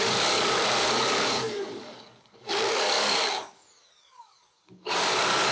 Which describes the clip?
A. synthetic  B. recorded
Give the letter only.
A